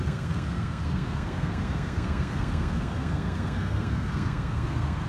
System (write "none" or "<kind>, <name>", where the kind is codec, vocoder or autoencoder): codec, SNAC